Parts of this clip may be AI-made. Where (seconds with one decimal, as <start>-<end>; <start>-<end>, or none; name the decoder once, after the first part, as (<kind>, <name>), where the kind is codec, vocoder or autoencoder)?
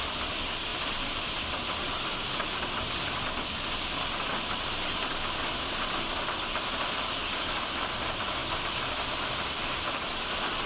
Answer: none